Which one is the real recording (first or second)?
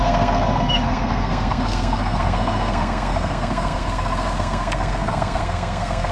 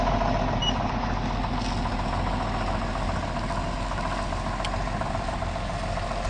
second